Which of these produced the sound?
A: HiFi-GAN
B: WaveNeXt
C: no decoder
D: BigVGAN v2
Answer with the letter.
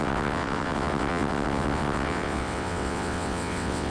B